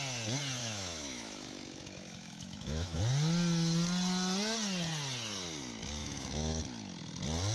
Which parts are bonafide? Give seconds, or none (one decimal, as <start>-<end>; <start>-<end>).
0.0-0.6; 3.0-6.0; 6.6-7.5

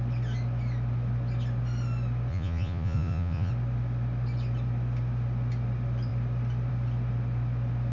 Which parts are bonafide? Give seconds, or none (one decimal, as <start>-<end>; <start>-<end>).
0.0-2.3; 3.5-7.9